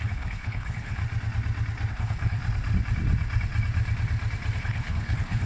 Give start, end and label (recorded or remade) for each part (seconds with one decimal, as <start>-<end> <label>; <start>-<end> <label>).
0.0-1.0 remade; 1.0-1.9 recorded; 1.9-2.4 remade; 2.4-4.6 recorded; 4.6-5.5 remade

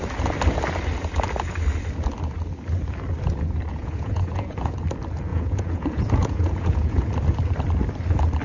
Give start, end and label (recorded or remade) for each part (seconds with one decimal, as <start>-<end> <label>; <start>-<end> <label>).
0.0-3.7 recorded; 3.7-4.8 remade; 4.8-5.3 recorded; 5.3-7.0 remade; 7.0-8.4 recorded

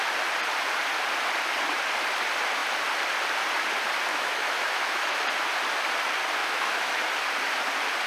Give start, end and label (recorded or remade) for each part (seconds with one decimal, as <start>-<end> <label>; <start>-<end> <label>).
0.0-4.1 recorded; 4.1-5.2 remade; 5.2-6.4 recorded; 6.4-7.0 remade; 7.0-8.1 recorded

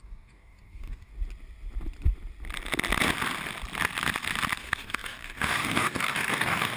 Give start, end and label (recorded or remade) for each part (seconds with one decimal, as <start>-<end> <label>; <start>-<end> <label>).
0.0-1.1 remade; 1.1-4.6 recorded; 4.6-6.8 remade